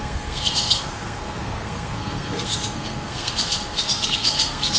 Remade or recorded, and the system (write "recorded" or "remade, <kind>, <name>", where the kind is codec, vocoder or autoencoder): remade, codec, SNAC